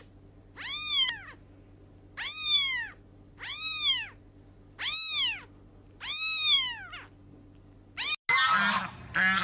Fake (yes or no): no